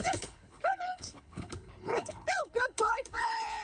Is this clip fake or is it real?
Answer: fake